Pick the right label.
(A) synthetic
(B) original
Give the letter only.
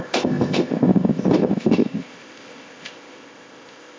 A